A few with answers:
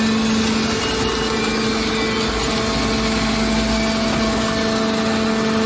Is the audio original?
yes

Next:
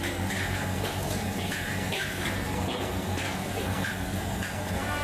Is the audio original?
no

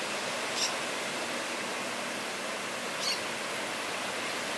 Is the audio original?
yes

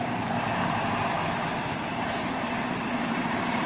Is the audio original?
no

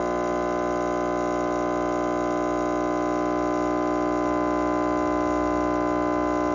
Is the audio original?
yes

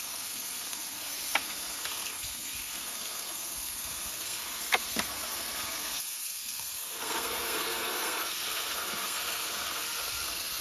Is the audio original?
no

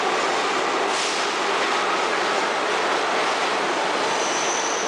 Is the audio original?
yes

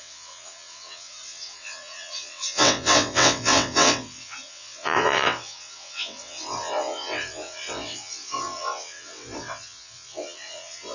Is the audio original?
no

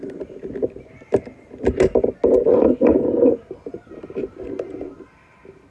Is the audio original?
yes